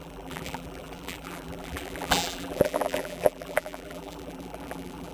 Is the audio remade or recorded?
remade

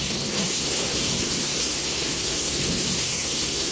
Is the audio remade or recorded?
remade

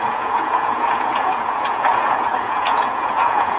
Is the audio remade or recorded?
remade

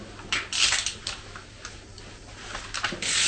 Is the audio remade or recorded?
recorded